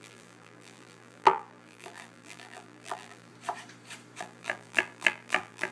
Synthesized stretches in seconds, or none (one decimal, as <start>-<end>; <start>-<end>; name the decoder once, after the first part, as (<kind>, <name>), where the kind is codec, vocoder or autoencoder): 0.0-3.3 (vocoder, BigVGAN v2); 4.2-5.7